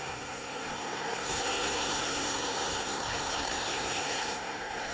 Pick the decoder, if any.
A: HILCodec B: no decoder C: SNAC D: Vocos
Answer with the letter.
C